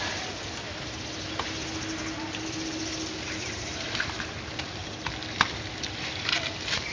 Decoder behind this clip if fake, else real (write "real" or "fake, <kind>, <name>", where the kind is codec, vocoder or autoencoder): real